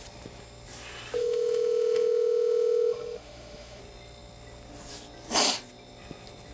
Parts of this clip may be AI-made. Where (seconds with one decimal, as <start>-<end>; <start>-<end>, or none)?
1.2-3.8